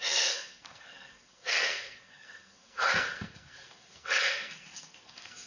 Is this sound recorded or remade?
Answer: remade